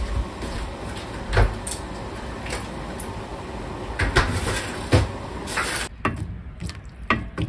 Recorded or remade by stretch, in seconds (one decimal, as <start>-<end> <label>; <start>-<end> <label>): 0.0-7.5 recorded